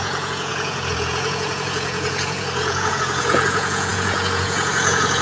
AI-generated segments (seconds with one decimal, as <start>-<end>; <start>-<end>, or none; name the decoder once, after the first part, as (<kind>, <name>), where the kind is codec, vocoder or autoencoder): 0.0-5.2 (vocoder, Vocos)